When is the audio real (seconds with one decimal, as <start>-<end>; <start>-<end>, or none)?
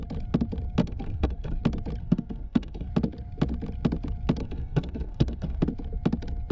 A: 0.0-0.8; 1.6-2.0; 2.9-4.4; 5.6-6.5